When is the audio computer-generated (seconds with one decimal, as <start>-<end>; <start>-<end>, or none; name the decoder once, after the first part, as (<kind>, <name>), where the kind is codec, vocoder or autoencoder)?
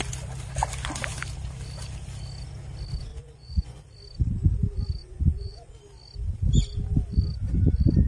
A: 3.1-3.8 (vocoder, Vocos); 5.0-5.7